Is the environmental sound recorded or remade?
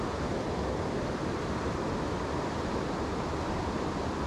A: recorded